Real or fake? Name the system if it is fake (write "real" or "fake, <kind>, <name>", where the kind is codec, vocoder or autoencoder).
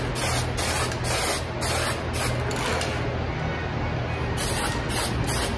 real